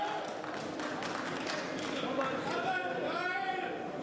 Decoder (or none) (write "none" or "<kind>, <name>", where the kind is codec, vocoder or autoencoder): none